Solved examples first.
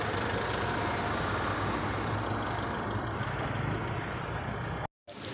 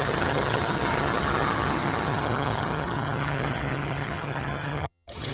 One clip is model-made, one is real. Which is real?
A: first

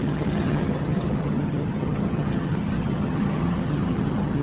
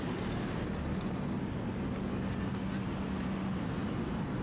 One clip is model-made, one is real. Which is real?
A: second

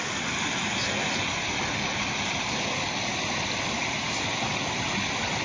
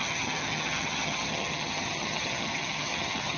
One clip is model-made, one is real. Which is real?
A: first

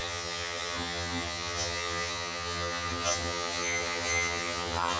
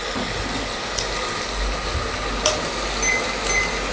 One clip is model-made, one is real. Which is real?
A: second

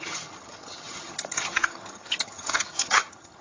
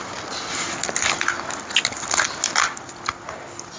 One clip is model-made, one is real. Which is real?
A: second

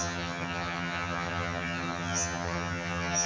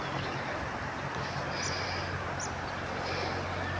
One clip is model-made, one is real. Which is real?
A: second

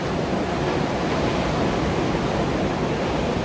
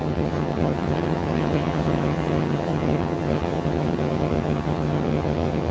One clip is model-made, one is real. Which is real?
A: first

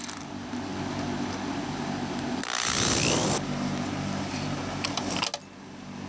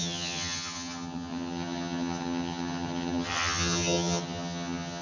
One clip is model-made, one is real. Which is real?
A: first